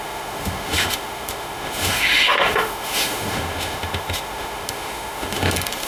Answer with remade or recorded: remade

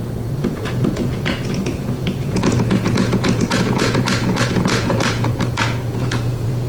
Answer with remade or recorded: remade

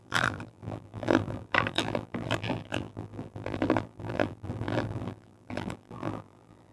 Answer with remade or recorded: remade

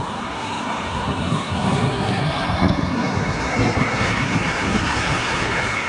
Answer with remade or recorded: remade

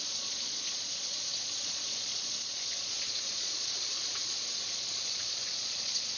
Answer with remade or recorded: remade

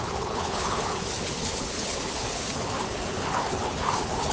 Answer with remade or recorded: remade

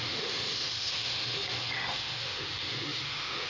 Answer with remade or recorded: remade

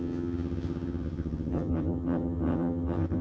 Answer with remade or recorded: remade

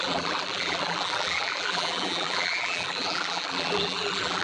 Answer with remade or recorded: remade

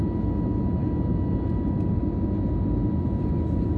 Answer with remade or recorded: recorded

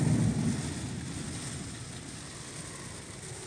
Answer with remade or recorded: recorded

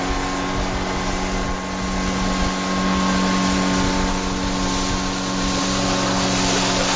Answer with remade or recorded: recorded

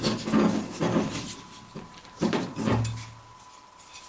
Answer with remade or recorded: recorded